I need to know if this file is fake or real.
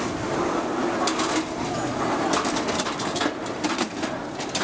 real